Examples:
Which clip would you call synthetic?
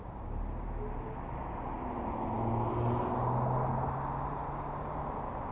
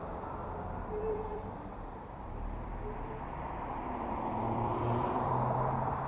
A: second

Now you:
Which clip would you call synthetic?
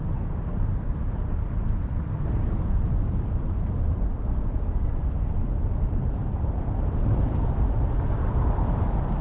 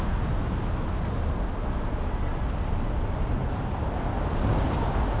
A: first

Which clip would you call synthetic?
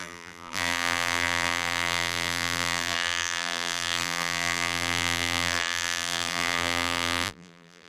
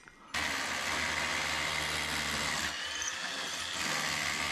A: first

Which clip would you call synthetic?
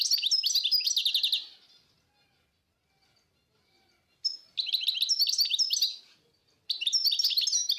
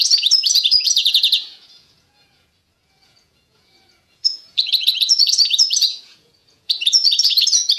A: second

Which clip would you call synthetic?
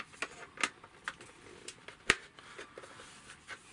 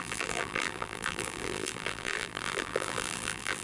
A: second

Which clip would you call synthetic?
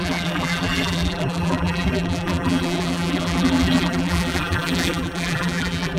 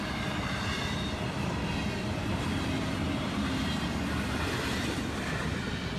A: first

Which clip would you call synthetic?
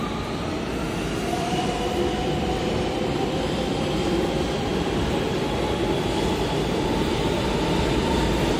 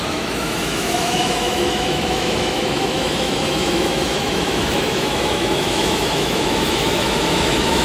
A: second